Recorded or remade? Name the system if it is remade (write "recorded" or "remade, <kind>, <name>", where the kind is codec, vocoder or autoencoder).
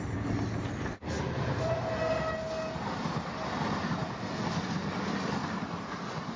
recorded